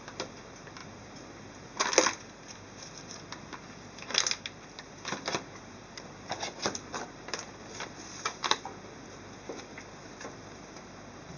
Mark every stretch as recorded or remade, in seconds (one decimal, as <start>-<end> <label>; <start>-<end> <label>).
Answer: 0.0-11.4 recorded